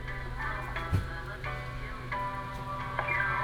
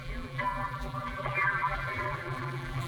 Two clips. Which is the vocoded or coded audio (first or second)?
second